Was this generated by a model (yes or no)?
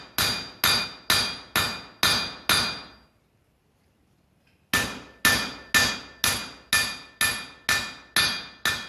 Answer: no